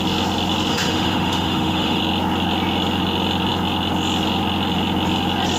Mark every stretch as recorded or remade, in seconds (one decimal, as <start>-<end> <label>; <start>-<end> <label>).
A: 0.0-0.7 recorded; 0.7-2.0 remade; 2.0-5.6 recorded